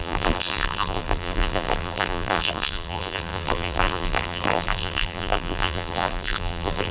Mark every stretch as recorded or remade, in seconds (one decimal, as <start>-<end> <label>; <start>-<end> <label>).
0.0-6.9 remade